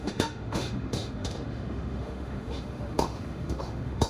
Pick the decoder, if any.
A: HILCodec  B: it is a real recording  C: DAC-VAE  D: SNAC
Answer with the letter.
C